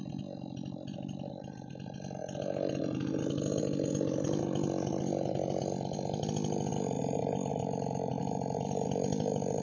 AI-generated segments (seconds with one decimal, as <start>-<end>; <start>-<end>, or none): none